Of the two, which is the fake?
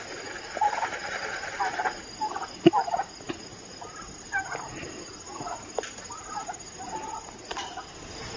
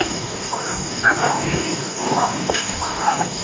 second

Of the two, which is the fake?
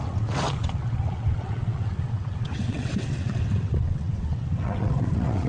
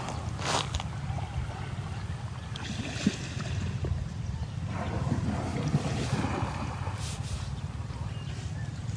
first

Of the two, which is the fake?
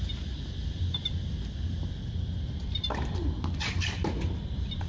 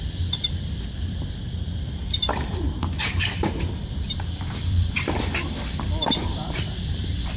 second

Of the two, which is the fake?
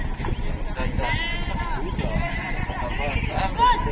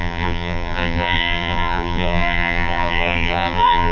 second